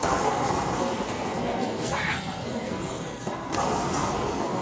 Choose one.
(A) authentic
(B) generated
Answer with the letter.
B